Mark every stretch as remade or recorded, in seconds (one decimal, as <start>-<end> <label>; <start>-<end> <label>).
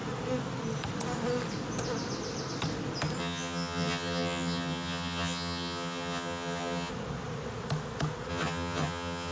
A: 0.0-3.2 recorded; 3.2-6.9 remade; 6.9-8.3 recorded; 8.3-9.3 remade